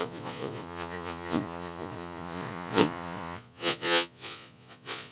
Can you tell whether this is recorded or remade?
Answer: remade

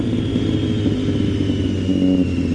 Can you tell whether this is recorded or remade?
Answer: recorded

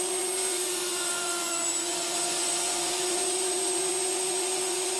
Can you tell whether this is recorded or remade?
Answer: remade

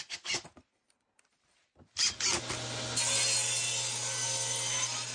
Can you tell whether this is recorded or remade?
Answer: recorded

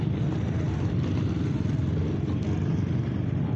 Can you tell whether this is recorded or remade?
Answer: recorded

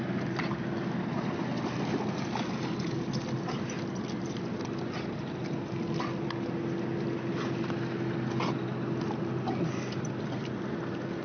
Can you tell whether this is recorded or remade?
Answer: recorded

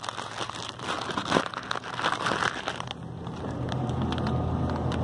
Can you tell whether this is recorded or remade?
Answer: recorded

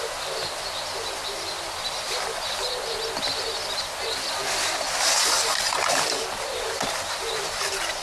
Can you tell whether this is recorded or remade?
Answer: recorded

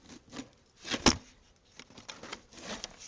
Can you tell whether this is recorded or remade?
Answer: recorded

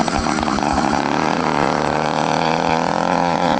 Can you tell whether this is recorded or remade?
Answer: remade